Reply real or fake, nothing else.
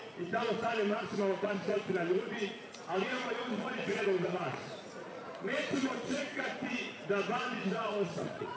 fake